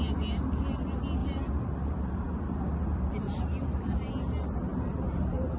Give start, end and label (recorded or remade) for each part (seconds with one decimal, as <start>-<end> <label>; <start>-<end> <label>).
0.0-1.2 recorded; 1.2-4.1 remade; 4.1-4.7 recorded; 4.7-5.6 remade